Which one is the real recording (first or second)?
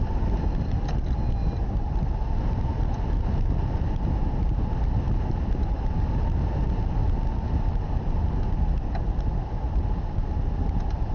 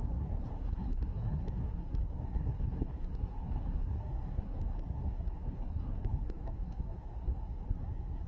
first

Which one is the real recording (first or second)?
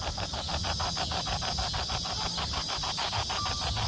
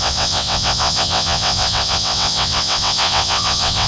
first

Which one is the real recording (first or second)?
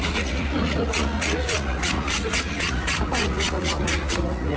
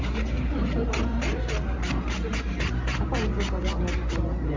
second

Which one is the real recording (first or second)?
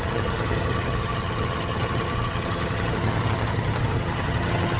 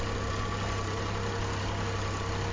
second